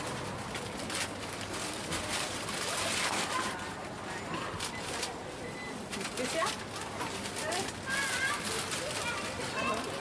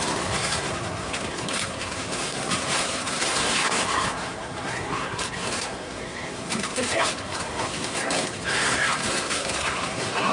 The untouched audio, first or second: first